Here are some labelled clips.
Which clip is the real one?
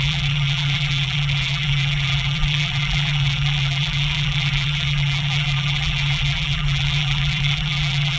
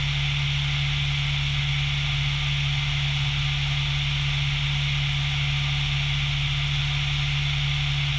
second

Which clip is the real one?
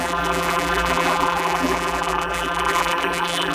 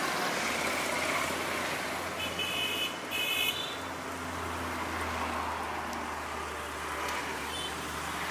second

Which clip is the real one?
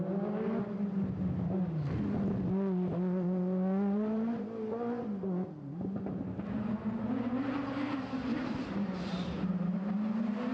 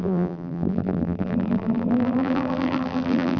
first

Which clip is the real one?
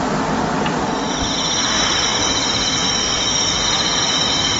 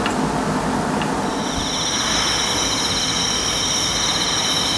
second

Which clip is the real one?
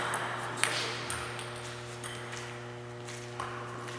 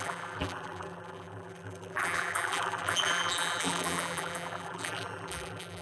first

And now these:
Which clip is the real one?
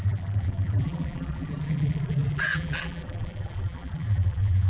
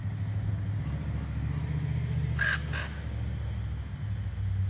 second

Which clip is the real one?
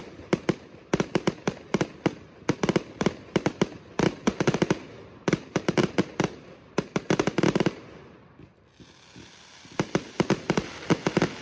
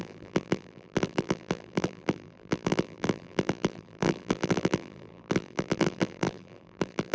first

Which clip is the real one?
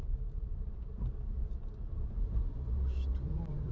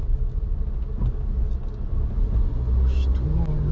second